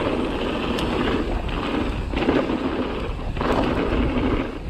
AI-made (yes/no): no